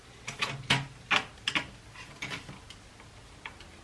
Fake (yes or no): no